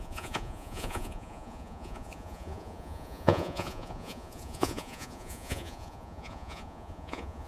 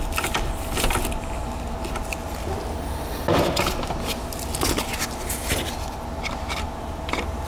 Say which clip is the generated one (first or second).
first